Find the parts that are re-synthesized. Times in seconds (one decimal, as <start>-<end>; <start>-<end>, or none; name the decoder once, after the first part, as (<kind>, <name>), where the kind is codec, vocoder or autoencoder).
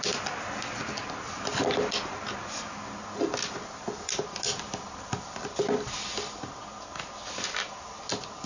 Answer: none